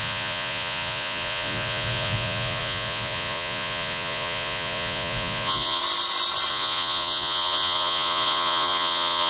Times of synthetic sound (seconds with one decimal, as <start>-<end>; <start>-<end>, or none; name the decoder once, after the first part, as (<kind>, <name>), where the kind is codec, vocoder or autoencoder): 0.0-5.8 (vocoder, Vocos); 6.5-9.3